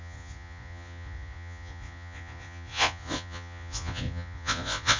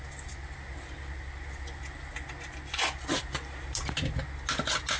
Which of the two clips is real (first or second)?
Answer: second